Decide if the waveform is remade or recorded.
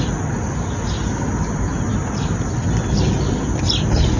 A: recorded